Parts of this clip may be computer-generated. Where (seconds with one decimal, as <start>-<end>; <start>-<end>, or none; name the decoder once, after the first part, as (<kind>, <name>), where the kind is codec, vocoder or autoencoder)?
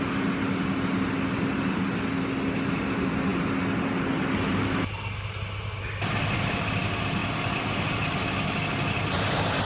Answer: none